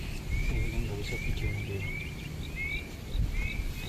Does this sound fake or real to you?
real